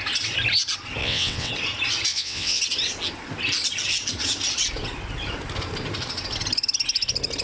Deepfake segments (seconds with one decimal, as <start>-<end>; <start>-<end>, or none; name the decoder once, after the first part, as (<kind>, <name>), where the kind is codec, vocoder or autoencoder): 1.0-1.5 (vocoder, WaveNeXt); 2.1-2.6